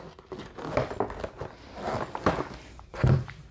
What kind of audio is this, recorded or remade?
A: recorded